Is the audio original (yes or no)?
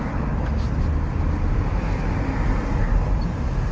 yes